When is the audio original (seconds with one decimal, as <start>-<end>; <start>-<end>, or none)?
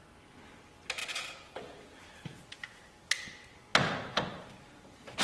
0.0-1.0; 2.9-5.2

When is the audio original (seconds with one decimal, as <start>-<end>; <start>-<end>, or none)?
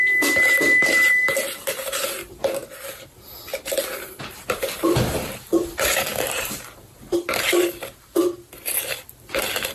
8.2-8.8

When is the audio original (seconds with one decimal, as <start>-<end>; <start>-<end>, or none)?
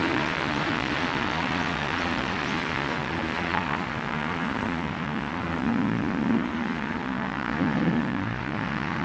none